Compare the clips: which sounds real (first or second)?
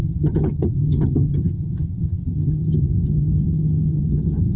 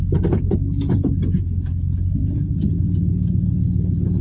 second